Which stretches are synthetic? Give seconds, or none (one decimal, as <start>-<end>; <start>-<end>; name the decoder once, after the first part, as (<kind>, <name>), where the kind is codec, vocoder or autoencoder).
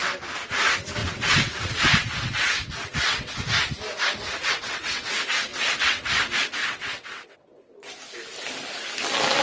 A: 1.0-3.4 (vocoder, WaveNeXt); 4.4-5.1; 5.5-6.1; 6.6-7.7